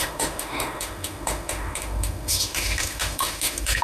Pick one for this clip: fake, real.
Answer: fake